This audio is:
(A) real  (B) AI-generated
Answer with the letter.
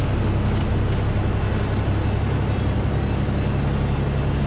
A